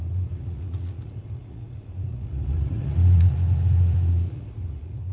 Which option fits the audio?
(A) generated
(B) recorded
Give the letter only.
A